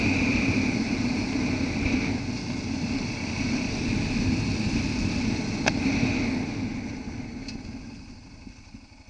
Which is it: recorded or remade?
recorded